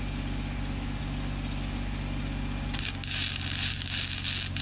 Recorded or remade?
recorded